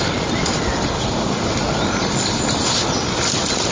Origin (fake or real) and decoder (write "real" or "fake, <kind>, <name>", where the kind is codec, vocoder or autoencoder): real